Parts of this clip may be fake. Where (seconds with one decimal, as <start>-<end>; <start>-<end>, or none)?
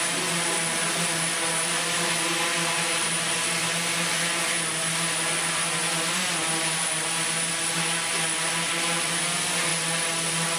none